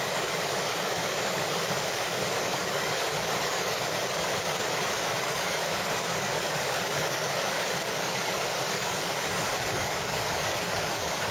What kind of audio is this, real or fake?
fake